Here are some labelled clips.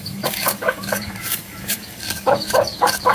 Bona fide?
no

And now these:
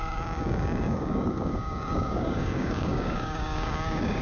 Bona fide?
no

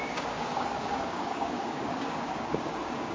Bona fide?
no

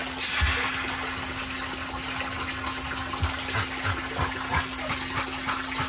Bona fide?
yes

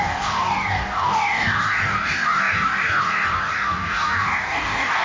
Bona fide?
no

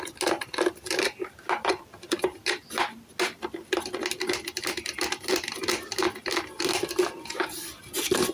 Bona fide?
yes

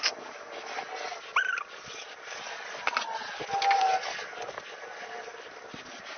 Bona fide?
yes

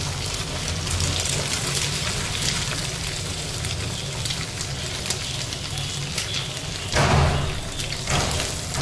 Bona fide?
yes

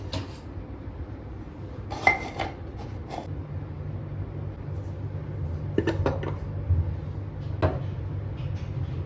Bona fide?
yes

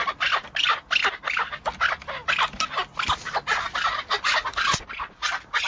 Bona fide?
yes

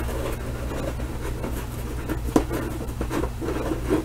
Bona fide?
yes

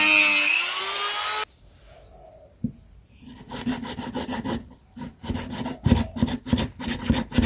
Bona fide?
yes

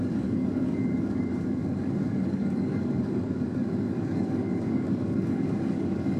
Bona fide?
no